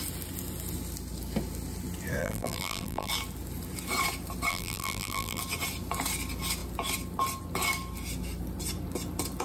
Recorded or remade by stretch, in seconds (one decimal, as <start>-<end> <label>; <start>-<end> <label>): 0.0-2.2 recorded; 2.2-3.1 remade; 3.1-4.5 recorded; 4.5-5.4 remade; 5.4-9.4 recorded